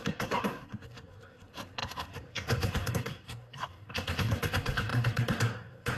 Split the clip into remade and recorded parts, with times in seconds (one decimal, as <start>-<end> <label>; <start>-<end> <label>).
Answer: 0.0-6.0 remade

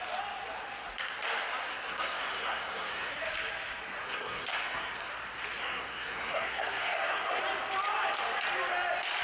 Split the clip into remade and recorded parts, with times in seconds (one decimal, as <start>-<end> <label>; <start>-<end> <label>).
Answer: 0.0-1.7 recorded; 1.7-3.1 remade; 3.1-4.0 recorded; 4.0-5.1 remade; 5.1-5.6 recorded; 5.6-7.4 remade; 7.4-9.2 recorded